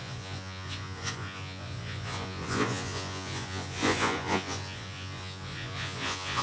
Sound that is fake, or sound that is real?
fake